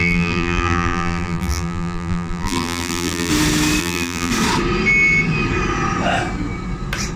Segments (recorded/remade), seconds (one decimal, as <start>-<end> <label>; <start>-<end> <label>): 0.0-3.3 remade; 3.3-3.8 recorded; 3.8-4.3 remade; 4.3-7.2 recorded